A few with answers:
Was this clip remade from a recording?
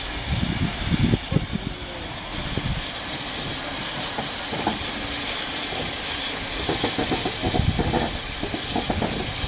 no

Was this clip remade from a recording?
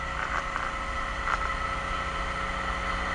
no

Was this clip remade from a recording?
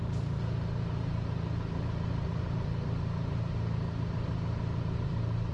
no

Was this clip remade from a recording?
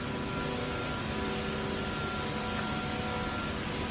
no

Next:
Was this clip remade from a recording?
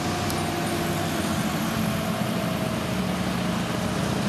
no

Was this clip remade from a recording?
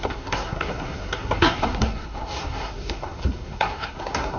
yes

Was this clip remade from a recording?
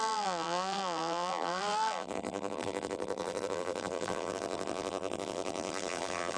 yes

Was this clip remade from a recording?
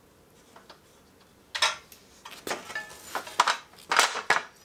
no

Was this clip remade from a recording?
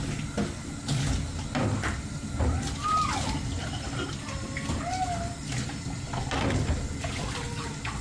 no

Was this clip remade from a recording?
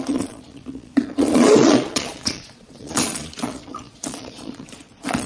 yes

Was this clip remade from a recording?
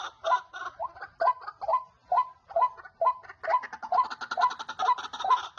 no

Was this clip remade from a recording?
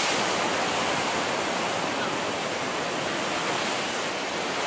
no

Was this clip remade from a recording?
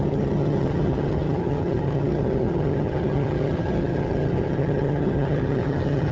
yes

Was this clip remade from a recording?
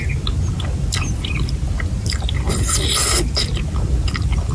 no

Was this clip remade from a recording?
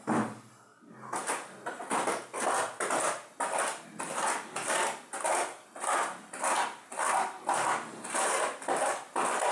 no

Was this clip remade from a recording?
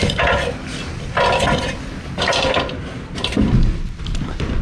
no